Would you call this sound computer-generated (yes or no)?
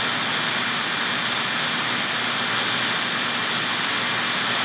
no